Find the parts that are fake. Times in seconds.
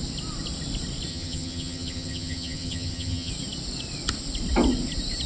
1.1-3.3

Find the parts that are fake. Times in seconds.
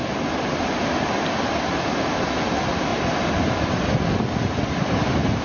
none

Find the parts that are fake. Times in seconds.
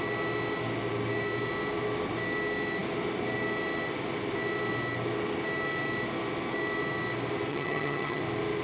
7.5-8.2